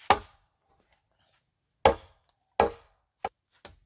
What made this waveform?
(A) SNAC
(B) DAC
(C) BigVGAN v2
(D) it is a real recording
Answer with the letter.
D